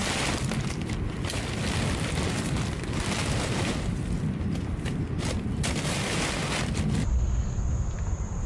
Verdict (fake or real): real